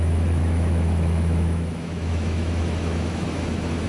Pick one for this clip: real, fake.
fake